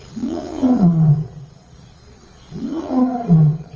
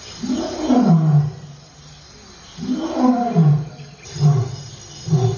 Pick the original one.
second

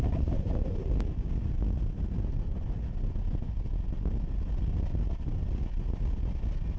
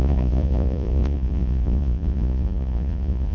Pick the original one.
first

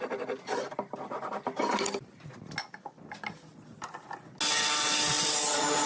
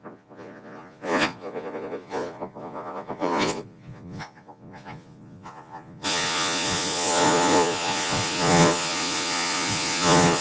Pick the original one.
first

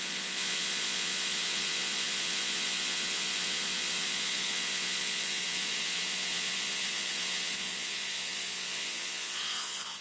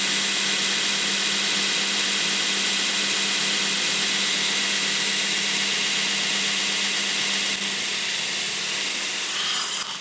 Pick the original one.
second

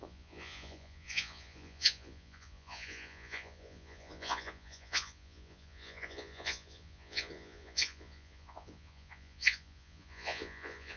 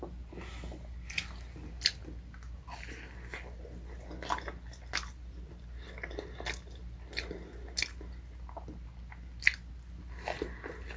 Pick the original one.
second